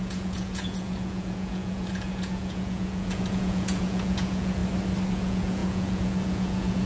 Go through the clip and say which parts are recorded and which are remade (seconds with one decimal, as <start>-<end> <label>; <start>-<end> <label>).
0.0-4.6 remade; 4.6-5.1 recorded; 5.1-6.9 remade